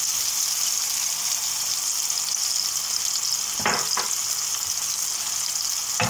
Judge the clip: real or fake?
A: real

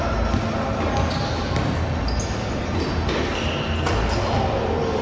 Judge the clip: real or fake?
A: real